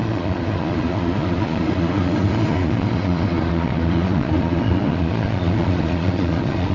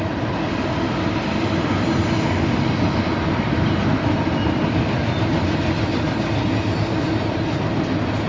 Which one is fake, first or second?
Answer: first